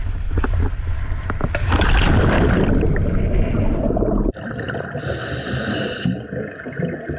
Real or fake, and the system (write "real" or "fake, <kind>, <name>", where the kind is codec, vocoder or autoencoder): real